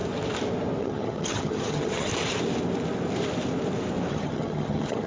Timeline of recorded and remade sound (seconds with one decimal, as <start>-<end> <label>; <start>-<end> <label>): 0.0-0.8 recorded; 0.8-2.1 remade; 2.1-4.1 recorded; 4.1-5.1 remade